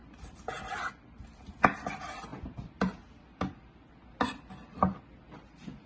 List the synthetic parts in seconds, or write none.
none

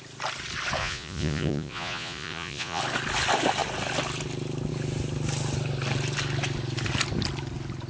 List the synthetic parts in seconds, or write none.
0.8-2.8 (vocoder, Vocos)

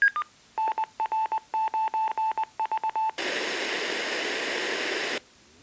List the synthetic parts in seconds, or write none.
none